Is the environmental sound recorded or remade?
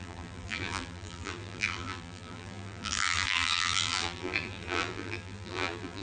remade